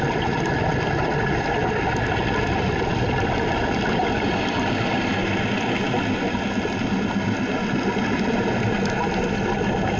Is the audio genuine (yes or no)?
yes